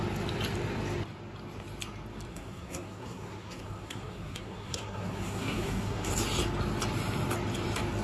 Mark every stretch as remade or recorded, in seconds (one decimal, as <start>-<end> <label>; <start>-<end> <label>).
0.0-2.3 recorded; 2.3-6.1 remade; 6.1-8.0 recorded